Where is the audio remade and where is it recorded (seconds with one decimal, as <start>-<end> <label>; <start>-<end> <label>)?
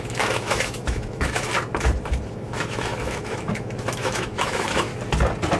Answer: 0.0-1.5 remade; 1.5-2.3 recorded; 2.3-4.9 remade; 4.9-5.6 recorded